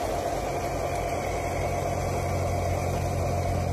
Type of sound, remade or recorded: recorded